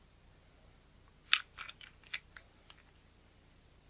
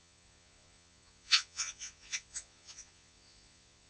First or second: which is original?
first